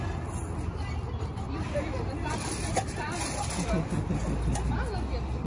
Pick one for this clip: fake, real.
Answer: real